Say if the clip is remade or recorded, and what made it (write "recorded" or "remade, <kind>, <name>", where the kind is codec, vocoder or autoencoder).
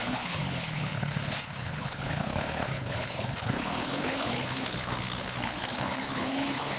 remade, codec, HILCodec